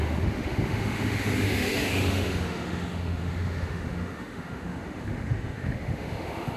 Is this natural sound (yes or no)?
no